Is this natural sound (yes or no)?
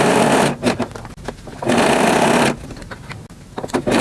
yes